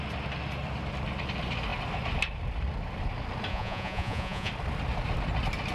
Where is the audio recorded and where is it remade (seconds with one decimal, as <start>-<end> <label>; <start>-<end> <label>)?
0.0-3.5 recorded; 3.5-4.5 remade; 4.5-5.7 recorded